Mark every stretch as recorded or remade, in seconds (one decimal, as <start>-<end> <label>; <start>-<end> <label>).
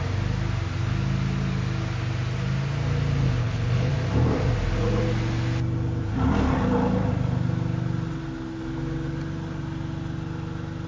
0.0-3.4 recorded; 3.4-3.9 remade; 3.9-10.9 recorded